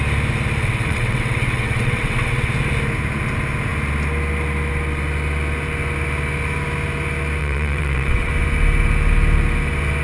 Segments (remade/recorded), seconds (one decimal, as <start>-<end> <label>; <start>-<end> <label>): 0.0-0.6 recorded; 0.6-2.5 remade; 2.5-7.4 recorded; 7.4-8.3 remade; 8.3-10.0 recorded